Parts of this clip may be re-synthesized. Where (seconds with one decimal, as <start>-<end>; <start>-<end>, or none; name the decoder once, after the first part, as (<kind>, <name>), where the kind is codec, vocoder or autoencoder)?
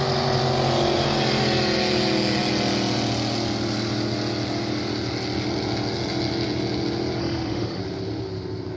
7.2-7.8 (autoencoder, DAC-VAE)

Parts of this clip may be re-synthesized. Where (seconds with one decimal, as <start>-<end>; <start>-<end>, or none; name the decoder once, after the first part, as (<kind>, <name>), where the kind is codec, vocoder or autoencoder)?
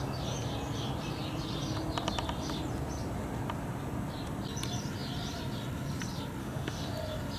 6.4-6.9 (autoencoder, DAC-VAE)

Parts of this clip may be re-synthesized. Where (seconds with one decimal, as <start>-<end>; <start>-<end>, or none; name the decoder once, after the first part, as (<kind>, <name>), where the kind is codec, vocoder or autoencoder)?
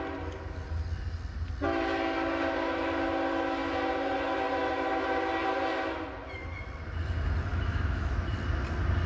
7.5-8.1 (autoencoder, DAC-VAE)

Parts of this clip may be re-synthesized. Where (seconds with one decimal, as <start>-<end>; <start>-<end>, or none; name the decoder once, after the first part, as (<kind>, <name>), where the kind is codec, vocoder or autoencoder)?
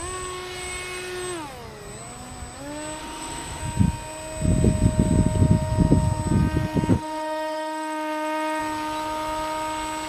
3.0-3.6 (autoencoder, DAC-VAE); 6.9-8.6